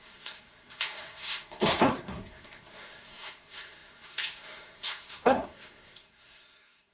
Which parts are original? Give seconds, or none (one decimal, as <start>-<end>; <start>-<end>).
none